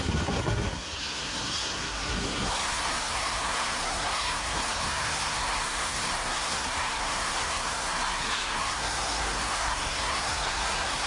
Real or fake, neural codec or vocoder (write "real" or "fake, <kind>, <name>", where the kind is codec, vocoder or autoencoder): fake, codec, SNAC